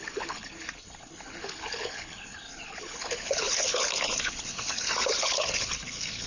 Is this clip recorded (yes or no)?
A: no